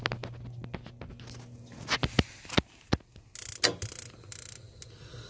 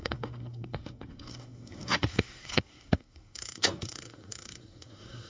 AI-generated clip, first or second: second